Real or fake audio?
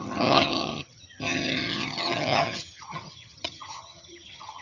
fake